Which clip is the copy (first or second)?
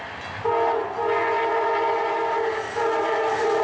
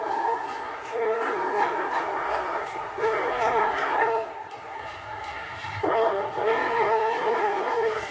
second